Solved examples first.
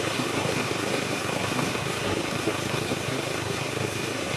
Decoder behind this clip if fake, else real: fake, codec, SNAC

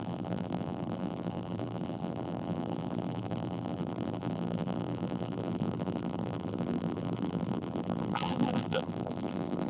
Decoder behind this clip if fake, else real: fake, vocoder, BigVGAN v2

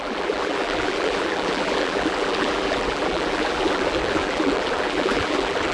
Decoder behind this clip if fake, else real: fake, vocoder, BigVGAN v2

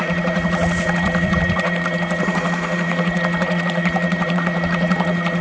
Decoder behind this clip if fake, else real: fake, vocoder, Vocos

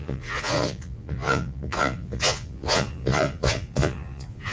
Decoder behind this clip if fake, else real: fake, vocoder, Vocos